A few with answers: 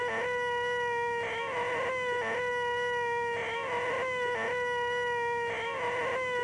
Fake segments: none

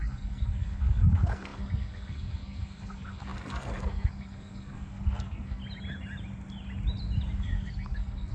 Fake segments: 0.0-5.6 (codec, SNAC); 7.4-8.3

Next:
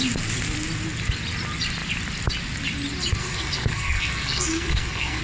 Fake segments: 3.2-5.2 (codec, SNAC)

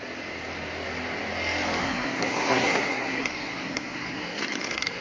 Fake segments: 1.8-5.0 (codec, SNAC)

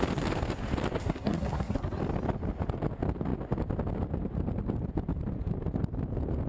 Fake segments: 1.0-2.0 (codec, SNAC)

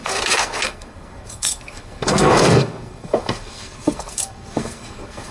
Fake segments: 0.0-5.3 (codec, SNAC)

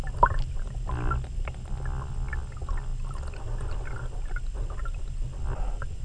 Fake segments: none

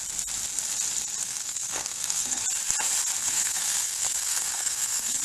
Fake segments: 1.2-2.4 (codec, SNAC); 3.2-5.2